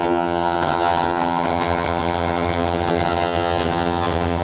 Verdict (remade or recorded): remade